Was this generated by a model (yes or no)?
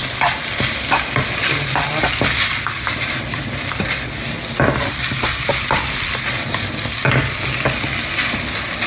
no